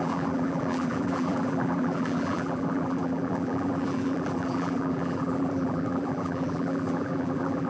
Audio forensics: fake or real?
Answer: fake